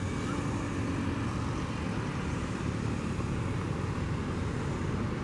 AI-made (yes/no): no